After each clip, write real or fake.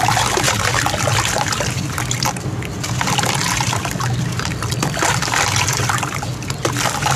fake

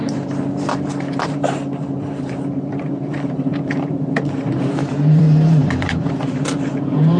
fake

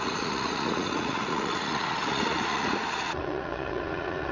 fake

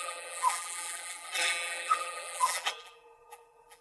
fake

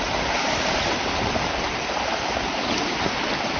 fake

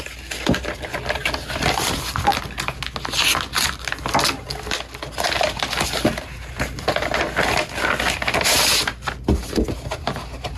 real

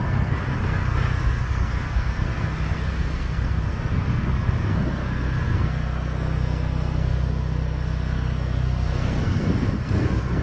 fake